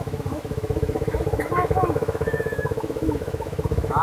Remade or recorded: remade